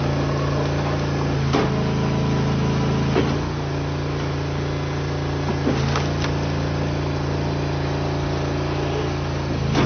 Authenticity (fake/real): real